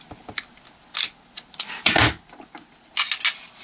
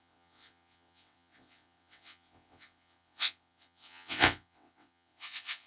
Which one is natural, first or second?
first